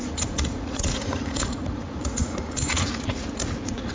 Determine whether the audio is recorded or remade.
remade